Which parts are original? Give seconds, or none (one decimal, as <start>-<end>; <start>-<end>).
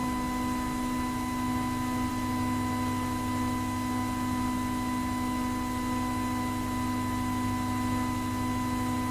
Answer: 0.0-9.1